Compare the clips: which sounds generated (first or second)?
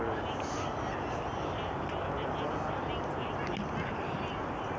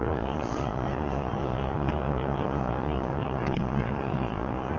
second